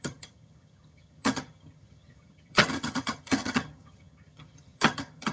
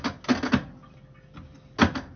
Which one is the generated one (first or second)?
first